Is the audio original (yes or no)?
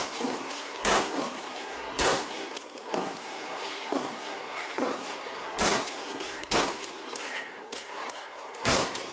no